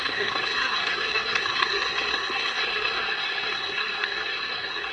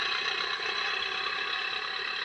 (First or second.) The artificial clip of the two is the first